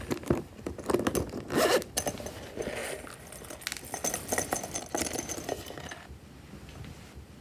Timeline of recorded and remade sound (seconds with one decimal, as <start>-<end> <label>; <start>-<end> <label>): 0.0-7.4 recorded